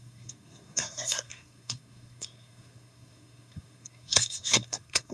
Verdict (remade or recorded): remade